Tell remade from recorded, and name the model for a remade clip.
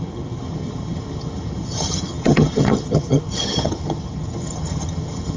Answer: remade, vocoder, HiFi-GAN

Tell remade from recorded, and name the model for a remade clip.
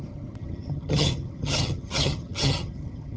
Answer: remade, vocoder, HiFi-GAN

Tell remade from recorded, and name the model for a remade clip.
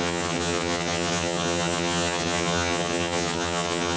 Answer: remade, vocoder, HiFi-GAN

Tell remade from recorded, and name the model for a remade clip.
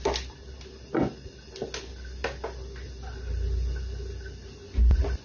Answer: recorded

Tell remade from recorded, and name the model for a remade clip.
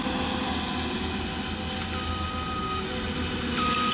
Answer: recorded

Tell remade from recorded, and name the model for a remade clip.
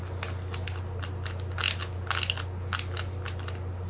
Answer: recorded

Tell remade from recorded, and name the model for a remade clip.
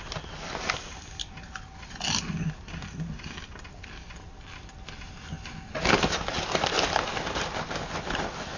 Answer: recorded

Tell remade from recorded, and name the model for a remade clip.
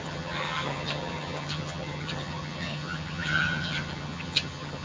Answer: remade, vocoder, HiFi-GAN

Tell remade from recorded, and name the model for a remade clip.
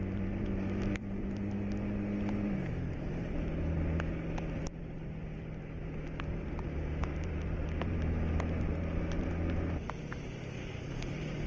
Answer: recorded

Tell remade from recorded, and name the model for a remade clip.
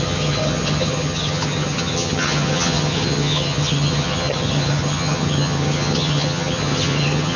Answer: remade, vocoder, HiFi-GAN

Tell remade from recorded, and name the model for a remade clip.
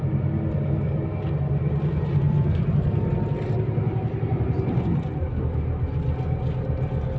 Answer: recorded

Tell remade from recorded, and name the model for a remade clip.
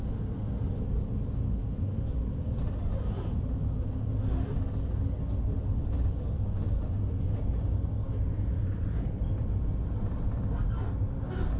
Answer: recorded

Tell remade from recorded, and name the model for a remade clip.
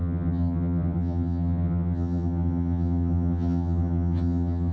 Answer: remade, vocoder, HiFi-GAN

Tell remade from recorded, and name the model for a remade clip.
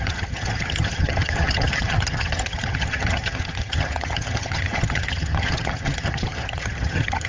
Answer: remade, vocoder, HiFi-GAN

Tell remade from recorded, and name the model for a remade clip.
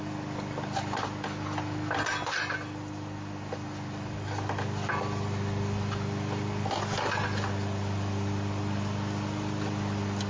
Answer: recorded